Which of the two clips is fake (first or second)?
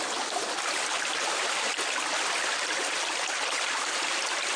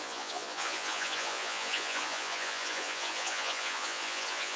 second